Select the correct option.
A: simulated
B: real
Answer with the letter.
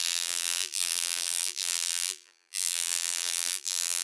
A